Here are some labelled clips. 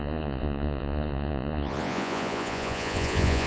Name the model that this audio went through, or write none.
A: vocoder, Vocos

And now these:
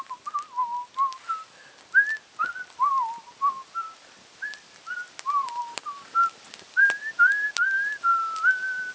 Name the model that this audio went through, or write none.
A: none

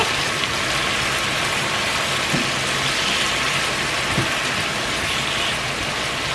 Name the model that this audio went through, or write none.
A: none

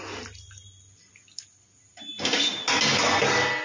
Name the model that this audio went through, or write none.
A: none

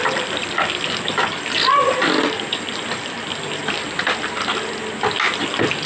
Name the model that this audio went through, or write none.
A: none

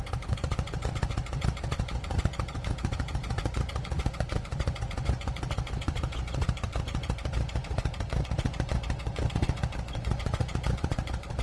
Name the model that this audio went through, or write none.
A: vocoder, Vocos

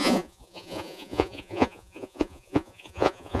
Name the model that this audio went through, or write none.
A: vocoder, Vocos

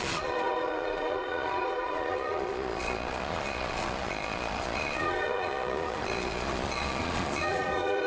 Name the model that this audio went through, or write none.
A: vocoder, Vocos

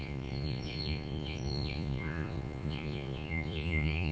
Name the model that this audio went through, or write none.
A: vocoder, Vocos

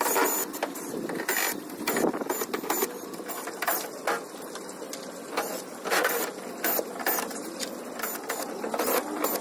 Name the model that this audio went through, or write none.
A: none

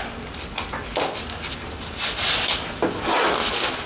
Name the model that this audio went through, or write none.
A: none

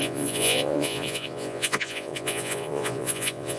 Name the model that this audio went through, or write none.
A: vocoder, Vocos